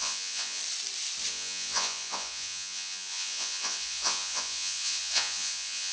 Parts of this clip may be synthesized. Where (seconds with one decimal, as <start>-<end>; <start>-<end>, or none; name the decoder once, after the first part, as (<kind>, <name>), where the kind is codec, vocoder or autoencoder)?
0.0-0.6 (vocoder, Vocos); 1.3-5.9